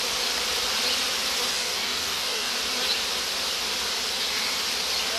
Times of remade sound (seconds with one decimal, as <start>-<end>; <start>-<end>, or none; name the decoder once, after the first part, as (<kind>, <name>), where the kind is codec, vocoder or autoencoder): 1.5-2.5 (codec, DAC)